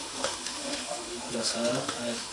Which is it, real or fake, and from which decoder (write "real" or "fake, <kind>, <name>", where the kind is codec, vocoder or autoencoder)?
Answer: fake, autoencoder, DAC-VAE